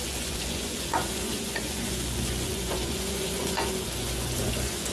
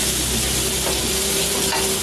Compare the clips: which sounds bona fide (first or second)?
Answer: second